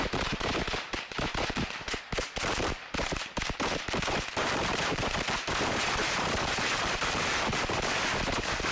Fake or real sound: fake